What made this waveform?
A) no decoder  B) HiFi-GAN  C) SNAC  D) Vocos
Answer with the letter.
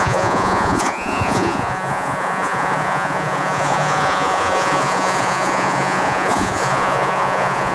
D